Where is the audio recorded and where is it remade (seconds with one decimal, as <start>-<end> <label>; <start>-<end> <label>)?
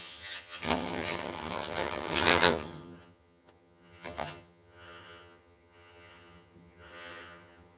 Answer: 0.0-7.8 remade